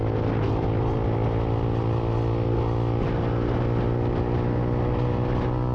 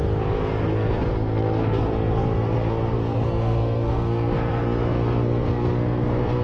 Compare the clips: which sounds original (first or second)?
first